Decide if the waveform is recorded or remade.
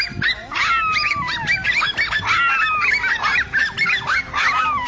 recorded